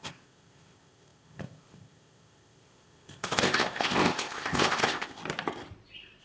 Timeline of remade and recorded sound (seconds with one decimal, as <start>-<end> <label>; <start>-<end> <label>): 0.0-5.2 remade; 5.2-6.2 recorded